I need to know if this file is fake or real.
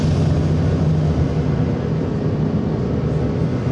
real